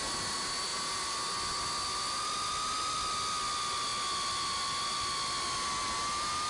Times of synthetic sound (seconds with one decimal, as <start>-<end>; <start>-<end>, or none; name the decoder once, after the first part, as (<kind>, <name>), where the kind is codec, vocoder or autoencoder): none

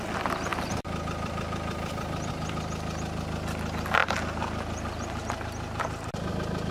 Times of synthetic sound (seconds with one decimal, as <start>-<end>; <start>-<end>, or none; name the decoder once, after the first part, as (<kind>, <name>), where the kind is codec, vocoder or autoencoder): 0.5-2.3 (vocoder, BigVGAN v2); 4.0-6.3

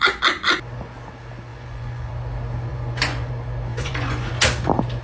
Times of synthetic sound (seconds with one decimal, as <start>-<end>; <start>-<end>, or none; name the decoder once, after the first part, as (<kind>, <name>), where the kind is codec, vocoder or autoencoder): 1.5-2.1 (vocoder, Vocos); 2.7-3.3; 3.7-4.3

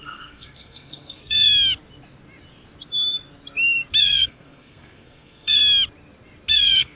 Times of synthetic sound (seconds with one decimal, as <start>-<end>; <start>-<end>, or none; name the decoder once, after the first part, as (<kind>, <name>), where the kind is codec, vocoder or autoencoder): 0.0-1.5 (codec, SNAC); 4.0-5.6; 6.5-7.0